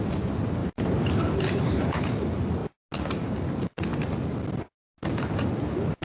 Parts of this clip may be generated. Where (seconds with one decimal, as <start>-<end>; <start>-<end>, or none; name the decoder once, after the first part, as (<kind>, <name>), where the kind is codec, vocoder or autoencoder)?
0.6-1.3 (vocoder, BigVGAN v2)

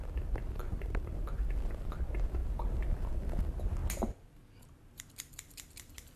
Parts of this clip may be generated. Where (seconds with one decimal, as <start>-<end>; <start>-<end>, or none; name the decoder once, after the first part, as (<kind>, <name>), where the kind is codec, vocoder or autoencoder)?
0.0-3.8 (vocoder, BigVGAN v2); 5.3-6.2

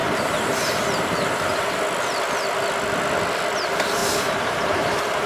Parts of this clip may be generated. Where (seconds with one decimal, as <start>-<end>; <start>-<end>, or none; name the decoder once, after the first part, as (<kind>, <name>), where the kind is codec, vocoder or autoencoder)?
0.0-1.8 (vocoder, BigVGAN v2); 4.0-5.3